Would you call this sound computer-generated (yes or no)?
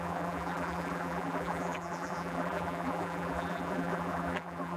yes